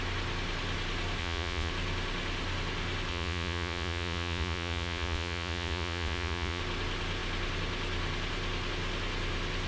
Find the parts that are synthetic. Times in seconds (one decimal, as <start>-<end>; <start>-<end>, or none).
1.2-1.7; 3.1-6.6